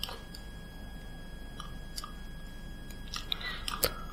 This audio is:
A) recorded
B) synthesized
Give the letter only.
A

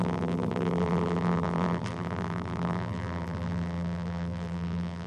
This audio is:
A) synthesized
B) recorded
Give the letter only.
A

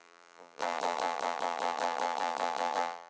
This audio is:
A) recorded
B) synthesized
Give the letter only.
B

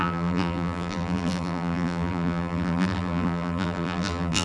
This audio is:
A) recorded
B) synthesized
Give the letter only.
B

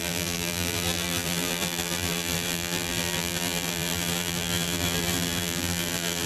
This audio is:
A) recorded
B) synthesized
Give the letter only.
B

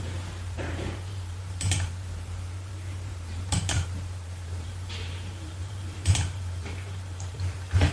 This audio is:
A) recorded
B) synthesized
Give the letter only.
B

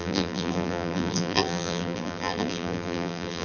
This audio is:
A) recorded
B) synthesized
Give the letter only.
B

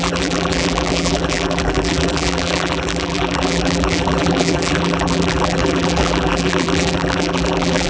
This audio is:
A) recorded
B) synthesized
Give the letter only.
B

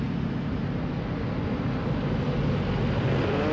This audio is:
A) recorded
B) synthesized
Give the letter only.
A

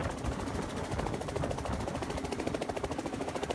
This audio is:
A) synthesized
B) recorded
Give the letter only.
B